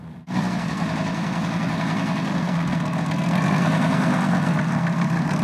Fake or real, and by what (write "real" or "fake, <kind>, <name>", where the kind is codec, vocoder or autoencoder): fake, codec, SNAC